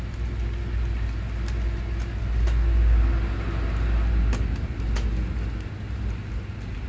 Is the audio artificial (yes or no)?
no